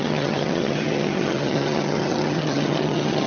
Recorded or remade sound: remade